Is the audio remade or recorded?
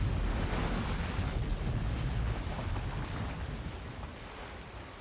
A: recorded